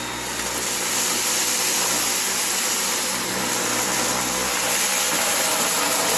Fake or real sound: real